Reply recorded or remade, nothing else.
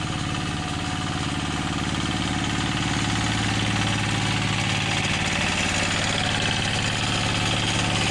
recorded